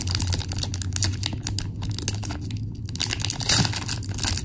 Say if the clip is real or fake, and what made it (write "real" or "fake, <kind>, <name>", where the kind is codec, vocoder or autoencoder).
real